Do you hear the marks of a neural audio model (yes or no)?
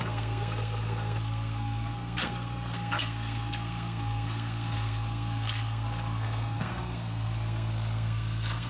yes